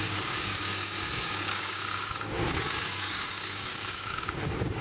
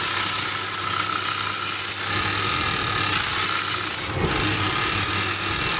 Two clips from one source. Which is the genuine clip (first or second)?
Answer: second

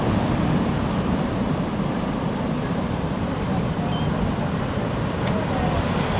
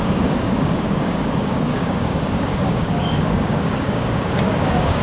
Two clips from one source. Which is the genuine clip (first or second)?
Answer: first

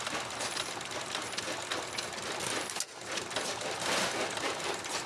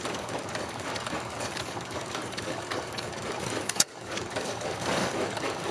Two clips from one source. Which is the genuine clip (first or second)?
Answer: first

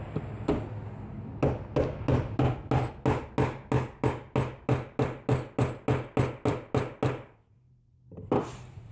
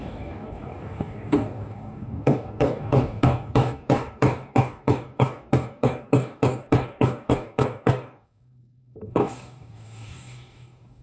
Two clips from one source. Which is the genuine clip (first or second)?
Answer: first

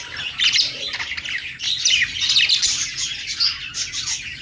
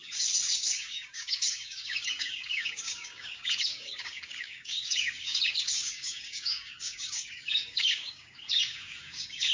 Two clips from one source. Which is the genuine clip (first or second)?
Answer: first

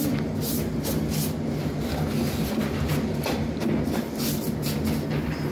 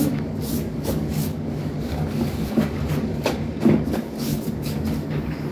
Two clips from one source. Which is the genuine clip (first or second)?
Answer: first